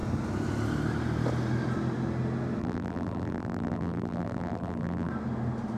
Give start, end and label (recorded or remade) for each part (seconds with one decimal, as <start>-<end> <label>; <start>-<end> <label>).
0.0-2.6 recorded; 2.6-5.1 remade; 5.1-5.8 recorded